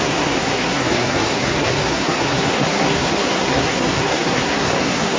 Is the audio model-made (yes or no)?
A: yes